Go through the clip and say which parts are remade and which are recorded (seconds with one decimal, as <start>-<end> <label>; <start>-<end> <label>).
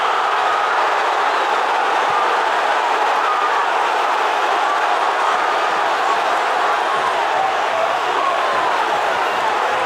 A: 0.0-7.7 recorded; 7.7-8.4 remade; 8.4-9.9 recorded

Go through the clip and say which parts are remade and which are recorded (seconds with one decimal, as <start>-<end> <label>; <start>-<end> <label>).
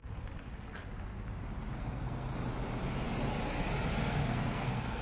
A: 0.0-1.7 recorded; 1.7-2.3 remade; 2.3-3.9 recorded; 3.9-5.0 remade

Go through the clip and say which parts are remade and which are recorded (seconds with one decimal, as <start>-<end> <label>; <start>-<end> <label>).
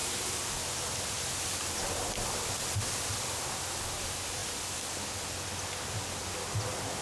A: 0.0-7.0 recorded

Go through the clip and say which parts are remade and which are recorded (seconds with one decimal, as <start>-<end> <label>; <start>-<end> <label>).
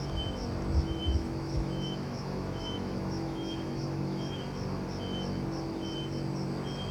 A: 0.0-1.0 recorded; 1.0-4.4 remade; 4.4-6.9 recorded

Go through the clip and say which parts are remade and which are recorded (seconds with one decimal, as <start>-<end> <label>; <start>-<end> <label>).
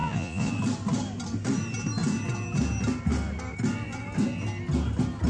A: 0.0-0.5 remade; 0.5-5.3 recorded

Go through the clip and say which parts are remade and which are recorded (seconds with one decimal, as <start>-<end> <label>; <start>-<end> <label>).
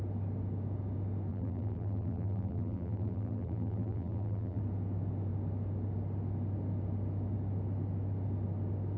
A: 0.0-1.3 recorded; 1.3-4.6 remade; 4.6-9.0 recorded